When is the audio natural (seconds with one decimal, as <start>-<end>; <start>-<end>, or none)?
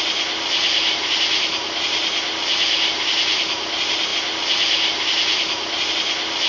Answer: 0.0-6.5